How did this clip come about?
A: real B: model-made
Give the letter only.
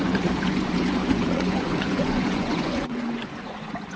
B